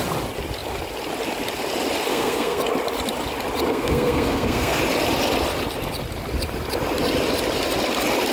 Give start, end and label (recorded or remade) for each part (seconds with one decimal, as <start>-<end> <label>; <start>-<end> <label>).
0.0-2.1 recorded; 2.1-2.6 remade; 2.6-3.7 recorded; 3.7-4.8 remade; 4.8-8.3 recorded